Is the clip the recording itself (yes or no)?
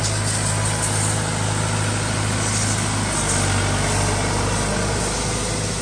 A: yes